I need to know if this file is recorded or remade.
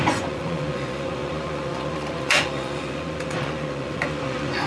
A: remade